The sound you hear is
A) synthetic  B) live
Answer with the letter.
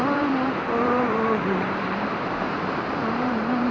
A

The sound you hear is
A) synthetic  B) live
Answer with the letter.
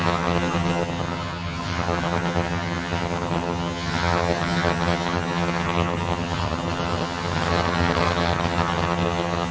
A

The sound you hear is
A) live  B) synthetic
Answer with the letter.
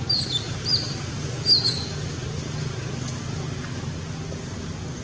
A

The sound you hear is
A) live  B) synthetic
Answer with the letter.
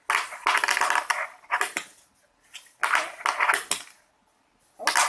A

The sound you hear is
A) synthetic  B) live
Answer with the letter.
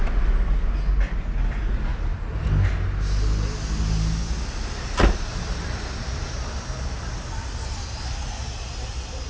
B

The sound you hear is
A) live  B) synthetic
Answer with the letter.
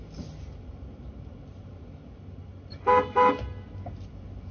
A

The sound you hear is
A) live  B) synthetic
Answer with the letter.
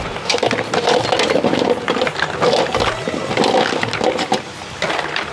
A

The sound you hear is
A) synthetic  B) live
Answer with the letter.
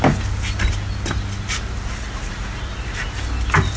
B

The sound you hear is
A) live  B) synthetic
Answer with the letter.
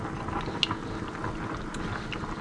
A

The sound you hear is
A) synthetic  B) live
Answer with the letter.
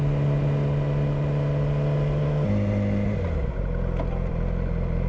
B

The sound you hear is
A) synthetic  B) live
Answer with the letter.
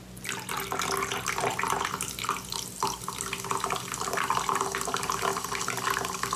B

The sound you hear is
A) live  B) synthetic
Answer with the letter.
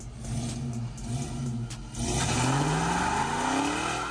A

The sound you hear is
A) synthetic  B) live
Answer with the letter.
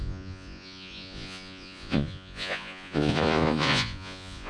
A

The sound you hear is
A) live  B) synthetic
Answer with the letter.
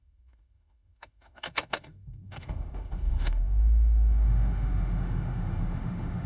B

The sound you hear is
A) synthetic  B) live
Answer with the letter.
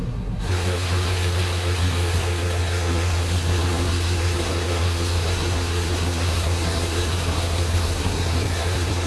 A